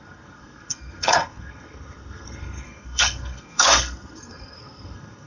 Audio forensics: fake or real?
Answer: fake